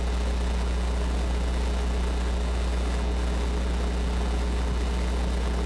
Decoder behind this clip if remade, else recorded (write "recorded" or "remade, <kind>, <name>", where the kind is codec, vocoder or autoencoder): recorded